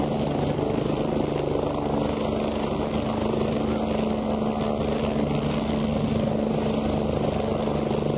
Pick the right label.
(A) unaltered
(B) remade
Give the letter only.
A